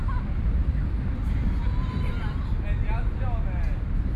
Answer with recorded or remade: recorded